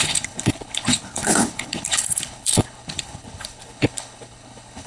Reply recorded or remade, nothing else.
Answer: remade